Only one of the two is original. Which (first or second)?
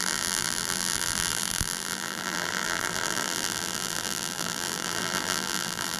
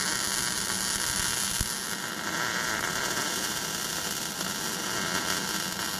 second